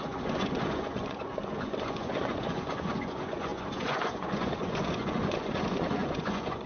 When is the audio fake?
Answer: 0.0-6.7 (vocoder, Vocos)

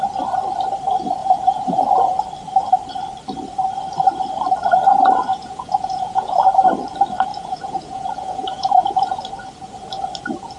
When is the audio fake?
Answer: 1.2-2.2 (vocoder, Vocos); 5.3-6.4; 7.3-9.2

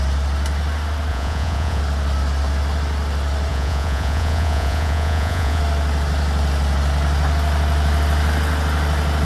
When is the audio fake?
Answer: 1.1-1.8 (vocoder, Vocos); 3.5-5.6

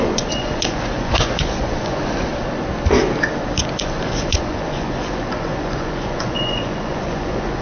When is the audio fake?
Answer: 0.0-2.3 (vocoder, Vocos); 3.8-7.6

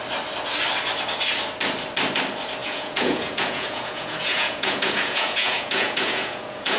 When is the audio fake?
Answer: 2.6-6.8 (vocoder, Vocos)

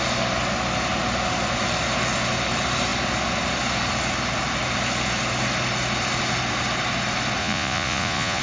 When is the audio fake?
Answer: 7.4-8.4 (vocoder, Vocos)

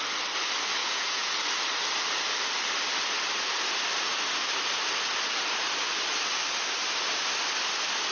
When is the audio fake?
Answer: 0.8-1.3 (vocoder, Vocos)

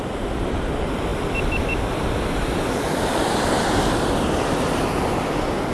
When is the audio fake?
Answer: none